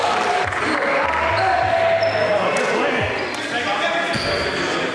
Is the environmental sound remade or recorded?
recorded